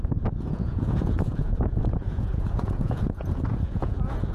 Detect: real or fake fake